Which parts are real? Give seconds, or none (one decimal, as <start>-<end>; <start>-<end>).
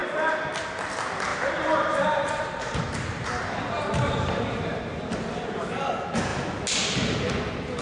0.0-1.3; 5.7-7.8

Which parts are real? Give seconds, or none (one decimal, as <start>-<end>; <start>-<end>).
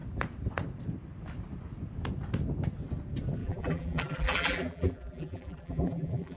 0.0-3.4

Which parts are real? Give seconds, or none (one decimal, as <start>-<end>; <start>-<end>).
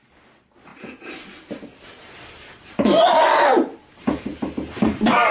4.3-4.8